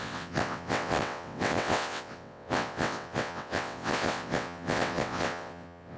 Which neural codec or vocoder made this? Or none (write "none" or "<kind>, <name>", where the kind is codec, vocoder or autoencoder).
vocoder, WaveNeXt